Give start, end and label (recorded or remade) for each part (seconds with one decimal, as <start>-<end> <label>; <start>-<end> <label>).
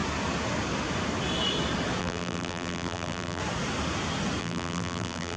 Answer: 0.0-2.0 recorded; 2.0-3.4 remade; 3.4-4.4 recorded; 4.4-5.4 remade